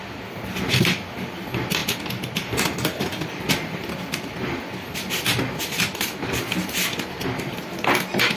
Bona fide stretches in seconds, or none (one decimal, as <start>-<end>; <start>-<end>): 0.0-8.4